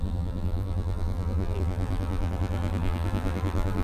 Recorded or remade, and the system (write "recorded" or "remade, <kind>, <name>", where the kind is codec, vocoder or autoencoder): remade, vocoder, BigVGAN v2